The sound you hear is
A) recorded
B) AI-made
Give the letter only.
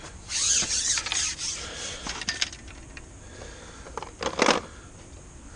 A